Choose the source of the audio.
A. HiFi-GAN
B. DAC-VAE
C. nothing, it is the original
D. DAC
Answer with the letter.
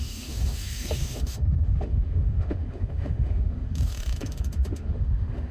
B